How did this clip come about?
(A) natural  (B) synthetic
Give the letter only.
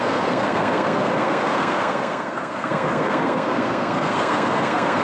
B